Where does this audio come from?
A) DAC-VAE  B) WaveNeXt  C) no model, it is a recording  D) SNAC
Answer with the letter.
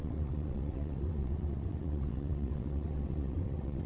B